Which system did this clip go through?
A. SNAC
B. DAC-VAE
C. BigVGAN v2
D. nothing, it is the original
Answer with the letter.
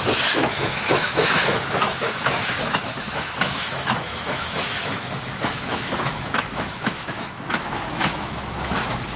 B